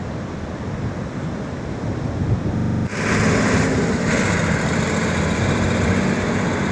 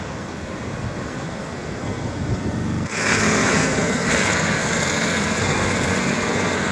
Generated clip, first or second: second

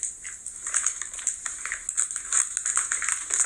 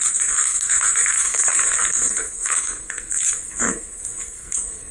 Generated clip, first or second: second